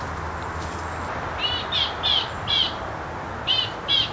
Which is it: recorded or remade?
recorded